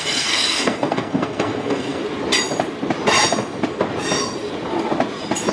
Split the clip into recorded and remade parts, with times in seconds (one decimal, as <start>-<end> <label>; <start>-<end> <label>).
0.0-2.0 remade; 2.0-5.5 recorded